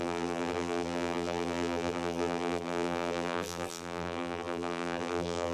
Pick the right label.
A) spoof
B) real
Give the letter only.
A